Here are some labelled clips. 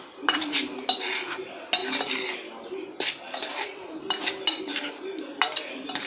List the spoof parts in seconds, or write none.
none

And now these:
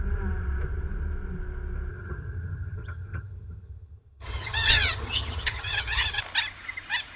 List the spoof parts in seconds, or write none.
1.9-6.2 (vocoder, HiFi-GAN)

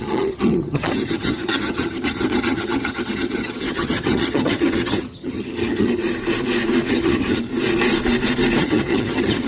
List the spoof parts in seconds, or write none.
0.0-6.0 (vocoder, HiFi-GAN); 6.9-7.5; 8.6-9.5

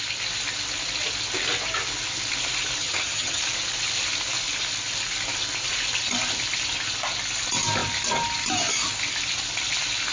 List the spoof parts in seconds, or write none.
2.8-3.4 (vocoder, HiFi-GAN)

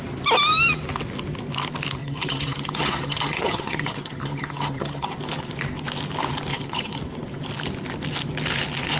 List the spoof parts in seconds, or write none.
2.0-5.2 (vocoder, HiFi-GAN); 6.5-7.0

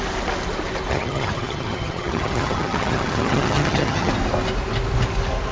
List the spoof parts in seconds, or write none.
0.9-4.1 (vocoder, HiFi-GAN)

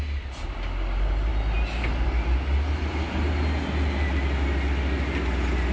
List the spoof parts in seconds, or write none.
none

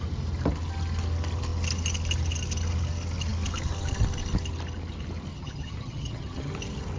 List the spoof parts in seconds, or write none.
5.3-6.5 (vocoder, HiFi-GAN)